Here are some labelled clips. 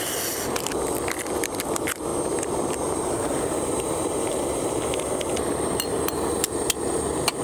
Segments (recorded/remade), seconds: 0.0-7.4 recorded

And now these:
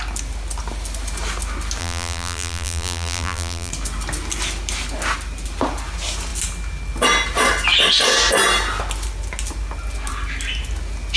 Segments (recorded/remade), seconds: 0.0-1.8 recorded; 1.8-3.7 remade; 3.7-11.2 recorded

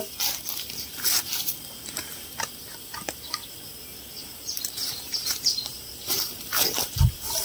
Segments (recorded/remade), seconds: 0.0-4.2 recorded; 4.2-7.4 remade

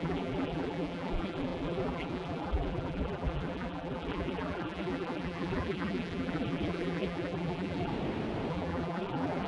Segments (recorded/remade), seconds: 0.0-7.9 remade; 7.9-8.5 recorded; 8.5-9.5 remade